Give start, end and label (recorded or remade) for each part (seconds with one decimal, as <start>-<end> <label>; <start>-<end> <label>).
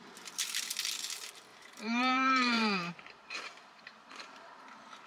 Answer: 0.0-1.5 recorded; 1.5-4.6 remade; 4.6-5.1 recorded